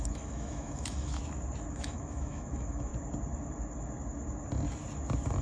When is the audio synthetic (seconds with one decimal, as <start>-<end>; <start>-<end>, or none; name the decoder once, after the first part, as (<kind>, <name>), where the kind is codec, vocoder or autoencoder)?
0.0-1.2 (autoencoder, DAC-VAE); 1.7-2.9